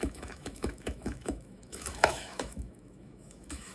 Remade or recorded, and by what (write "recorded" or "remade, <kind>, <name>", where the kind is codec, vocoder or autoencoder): remade, autoencoder, DAC-VAE